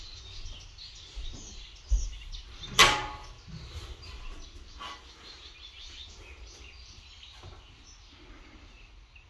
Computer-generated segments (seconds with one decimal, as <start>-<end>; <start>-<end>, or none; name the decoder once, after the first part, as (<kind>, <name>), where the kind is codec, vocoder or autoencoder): none